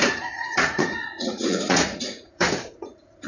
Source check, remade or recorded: remade